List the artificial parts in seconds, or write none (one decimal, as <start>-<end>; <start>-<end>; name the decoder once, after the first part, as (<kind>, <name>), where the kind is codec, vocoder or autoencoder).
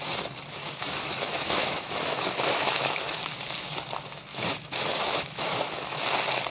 0.5-3.2 (autoencoder, DAC-VAE); 4.3-6.0